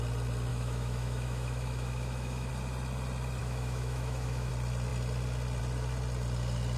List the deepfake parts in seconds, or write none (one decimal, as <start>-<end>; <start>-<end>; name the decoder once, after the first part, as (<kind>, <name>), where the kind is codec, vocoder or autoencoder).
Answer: 0.5-2.5 (autoencoder, DAC-VAE); 3.4-4.5